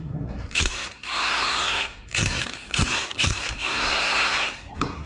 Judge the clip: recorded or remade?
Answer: remade